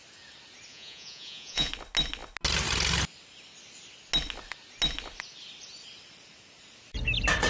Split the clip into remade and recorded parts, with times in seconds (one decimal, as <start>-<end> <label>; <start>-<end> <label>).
0.0-0.7 recorded; 0.7-1.7 remade; 1.7-7.5 recorded